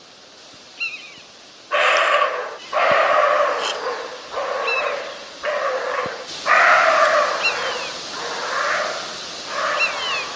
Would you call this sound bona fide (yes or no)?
yes